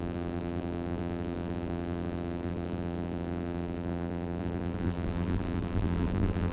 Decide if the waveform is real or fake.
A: fake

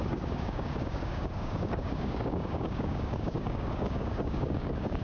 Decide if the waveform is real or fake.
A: fake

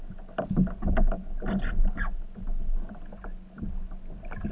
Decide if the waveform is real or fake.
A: real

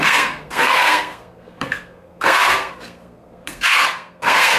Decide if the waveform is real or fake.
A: fake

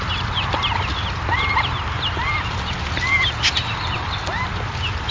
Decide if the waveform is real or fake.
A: real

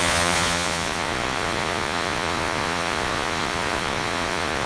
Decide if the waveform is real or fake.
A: fake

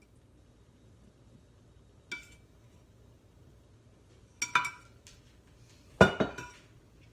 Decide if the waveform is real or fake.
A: real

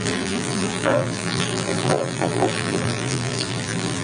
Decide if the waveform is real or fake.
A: fake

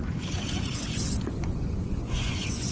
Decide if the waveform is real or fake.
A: fake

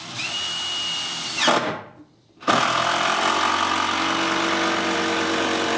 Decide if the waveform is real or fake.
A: real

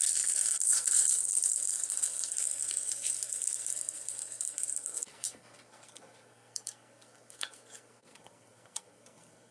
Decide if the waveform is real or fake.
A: fake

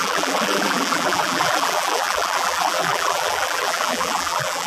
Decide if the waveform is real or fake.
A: fake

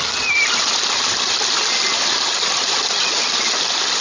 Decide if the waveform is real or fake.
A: real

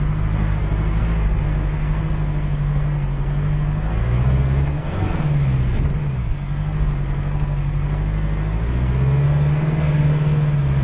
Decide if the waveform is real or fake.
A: fake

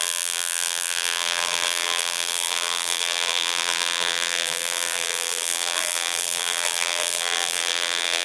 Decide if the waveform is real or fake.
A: fake